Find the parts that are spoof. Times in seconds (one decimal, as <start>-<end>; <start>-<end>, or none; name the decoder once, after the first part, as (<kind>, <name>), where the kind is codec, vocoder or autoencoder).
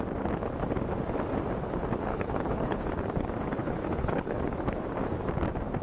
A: 2.1-2.9 (codec, HILCodec); 3.6-4.4